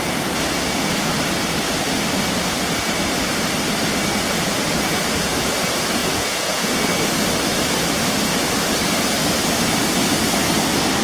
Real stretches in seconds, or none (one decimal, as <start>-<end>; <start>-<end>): 0.0-6.0; 6.7-11.0

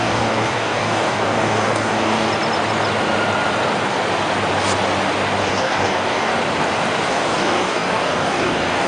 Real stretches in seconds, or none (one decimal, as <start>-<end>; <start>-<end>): 2.3-5.4; 6.3-7.1